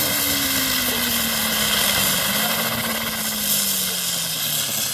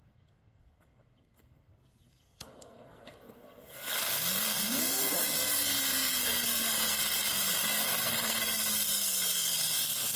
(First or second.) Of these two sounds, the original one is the first